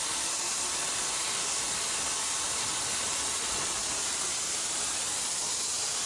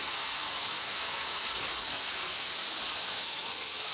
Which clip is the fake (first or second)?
second